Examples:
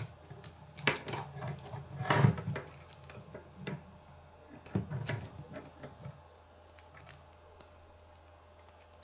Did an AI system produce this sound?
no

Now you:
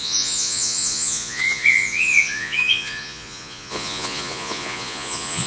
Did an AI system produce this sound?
yes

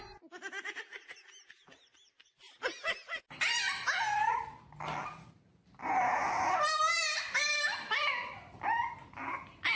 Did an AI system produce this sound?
no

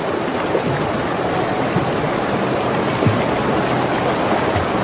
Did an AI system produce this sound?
no